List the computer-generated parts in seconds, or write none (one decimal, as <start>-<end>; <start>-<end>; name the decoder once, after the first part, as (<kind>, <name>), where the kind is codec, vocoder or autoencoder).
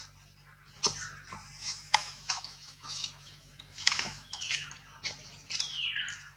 1.6-4.7 (autoencoder, DAC-VAE)